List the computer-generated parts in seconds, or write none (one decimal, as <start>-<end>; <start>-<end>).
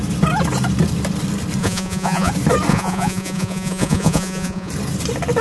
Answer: 1.6-2.3; 2.7-4.7